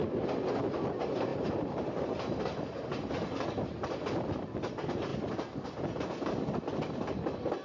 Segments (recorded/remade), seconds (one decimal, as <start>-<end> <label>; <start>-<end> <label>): 0.0-1.3 recorded; 1.3-3.6 remade; 3.6-7.6 recorded